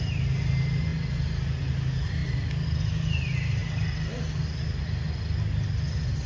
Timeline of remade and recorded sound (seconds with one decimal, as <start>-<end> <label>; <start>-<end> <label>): 0.0-6.3 recorded